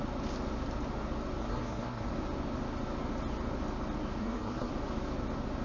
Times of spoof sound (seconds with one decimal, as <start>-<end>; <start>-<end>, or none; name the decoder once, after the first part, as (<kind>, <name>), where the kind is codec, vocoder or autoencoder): 1.4-2.1 (codec, SNAC); 4.2-4.7